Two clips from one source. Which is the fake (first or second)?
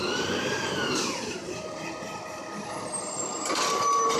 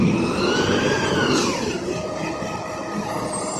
second